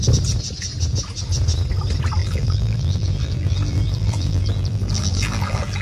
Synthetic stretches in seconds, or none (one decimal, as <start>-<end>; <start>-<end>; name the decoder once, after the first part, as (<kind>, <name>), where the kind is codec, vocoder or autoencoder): 2.2-5.8 (vocoder, BigVGAN v2)